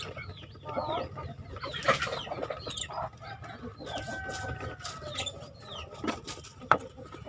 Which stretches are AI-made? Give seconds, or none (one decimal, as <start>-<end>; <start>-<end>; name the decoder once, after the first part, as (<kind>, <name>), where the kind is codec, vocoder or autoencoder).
6.5-7.3 (vocoder, BigVGAN v2)